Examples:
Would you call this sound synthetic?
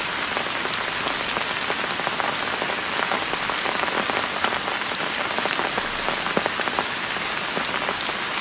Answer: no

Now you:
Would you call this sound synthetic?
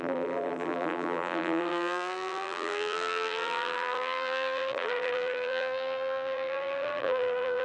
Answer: yes